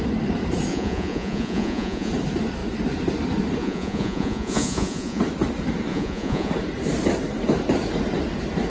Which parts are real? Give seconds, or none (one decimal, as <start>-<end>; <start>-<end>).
0.0-0.7; 2.1-3.6; 5.2-5.9; 6.5-8.7